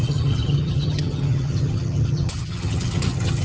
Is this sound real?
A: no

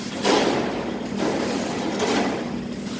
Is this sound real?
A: yes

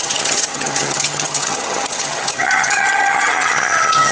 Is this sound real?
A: no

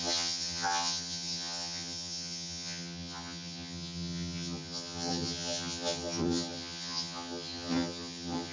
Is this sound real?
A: no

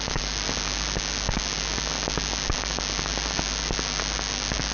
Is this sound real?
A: yes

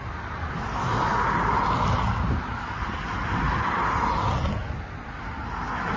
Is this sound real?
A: yes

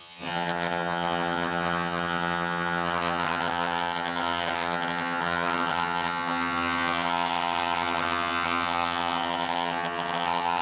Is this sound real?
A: no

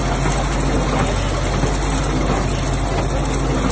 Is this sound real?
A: yes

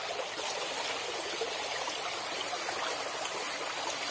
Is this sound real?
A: yes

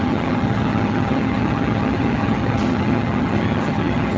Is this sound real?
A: no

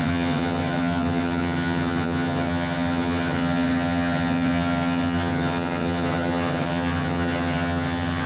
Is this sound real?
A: no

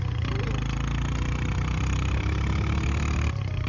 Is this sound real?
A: yes